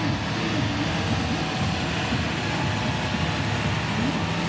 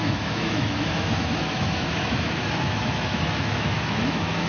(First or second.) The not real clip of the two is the second